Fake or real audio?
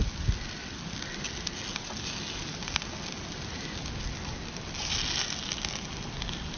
real